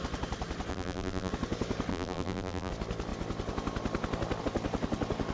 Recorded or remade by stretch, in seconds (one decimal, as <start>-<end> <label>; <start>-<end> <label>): 0.0-0.7 recorded; 0.7-1.3 remade; 1.3-1.9 recorded; 1.9-2.7 remade; 2.7-5.3 recorded